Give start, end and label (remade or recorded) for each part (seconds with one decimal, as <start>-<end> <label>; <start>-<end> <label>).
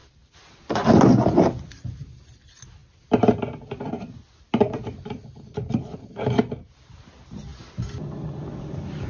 0.0-9.1 recorded